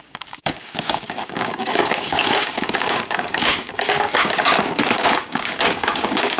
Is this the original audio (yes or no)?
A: no